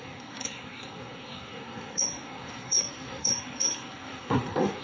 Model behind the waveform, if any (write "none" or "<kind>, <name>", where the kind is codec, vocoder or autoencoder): codec, SNAC